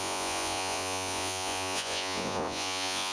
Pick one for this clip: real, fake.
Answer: fake